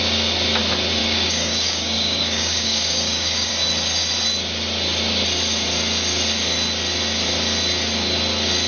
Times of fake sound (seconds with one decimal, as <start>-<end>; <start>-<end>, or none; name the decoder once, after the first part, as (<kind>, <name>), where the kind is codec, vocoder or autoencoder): 1.0-3.5 (codec, DAC)

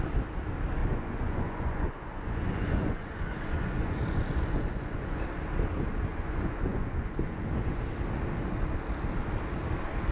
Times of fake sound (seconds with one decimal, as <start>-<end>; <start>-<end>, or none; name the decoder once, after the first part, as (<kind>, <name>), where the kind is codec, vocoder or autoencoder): 0.8-5.2 (vocoder, Vocos); 6.1-7.8